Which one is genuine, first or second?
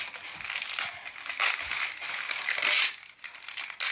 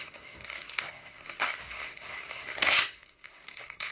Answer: first